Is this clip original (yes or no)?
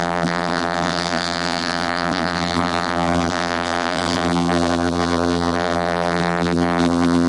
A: no